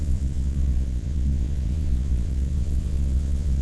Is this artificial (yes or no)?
yes